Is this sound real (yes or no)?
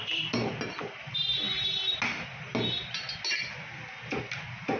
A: yes